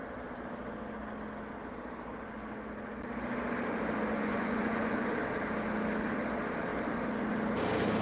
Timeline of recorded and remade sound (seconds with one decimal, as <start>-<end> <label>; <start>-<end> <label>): 0.0-4.1 recorded; 4.1-5.1 remade; 5.1-8.0 recorded